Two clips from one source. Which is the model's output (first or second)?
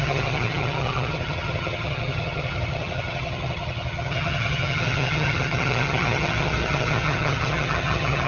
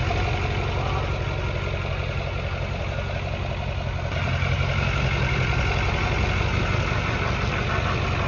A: first